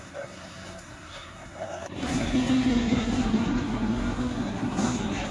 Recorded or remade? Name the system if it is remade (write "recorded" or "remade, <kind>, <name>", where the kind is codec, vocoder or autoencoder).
remade, codec, SNAC